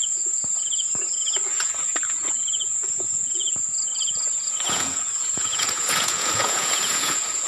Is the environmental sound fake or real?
fake